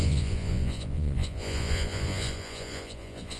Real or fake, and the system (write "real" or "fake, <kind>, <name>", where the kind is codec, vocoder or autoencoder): fake, vocoder, Vocos